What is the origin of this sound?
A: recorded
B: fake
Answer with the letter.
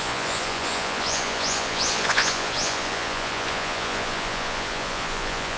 B